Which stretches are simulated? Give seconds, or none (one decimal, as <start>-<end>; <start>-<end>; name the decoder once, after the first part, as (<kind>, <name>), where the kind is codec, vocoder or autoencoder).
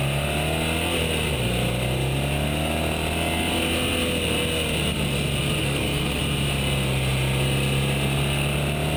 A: 5.6-6.2 (codec, SNAC)